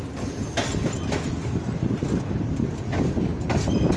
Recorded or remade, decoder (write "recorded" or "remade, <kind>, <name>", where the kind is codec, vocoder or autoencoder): recorded